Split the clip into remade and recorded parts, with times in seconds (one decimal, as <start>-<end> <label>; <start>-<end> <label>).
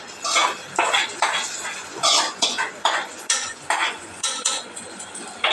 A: 0.0-1.8 recorded; 1.8-5.1 remade; 5.1-5.5 recorded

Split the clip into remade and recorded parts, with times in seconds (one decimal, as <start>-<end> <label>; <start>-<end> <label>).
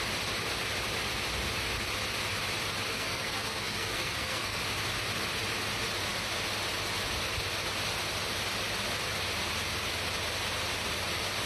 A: 0.0-2.9 recorded; 2.9-4.6 remade; 4.6-11.5 recorded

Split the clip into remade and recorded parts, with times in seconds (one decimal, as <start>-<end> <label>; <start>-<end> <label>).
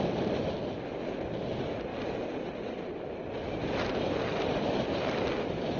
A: 0.0-5.8 recorded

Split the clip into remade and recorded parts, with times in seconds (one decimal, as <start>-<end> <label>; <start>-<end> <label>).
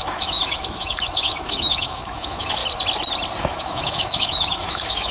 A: 0.0-2.6 remade; 2.6-3.4 recorded; 3.4-5.1 remade